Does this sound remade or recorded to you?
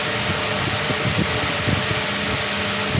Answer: recorded